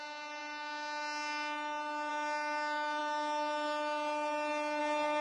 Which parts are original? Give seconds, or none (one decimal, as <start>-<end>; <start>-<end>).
0.0-5.2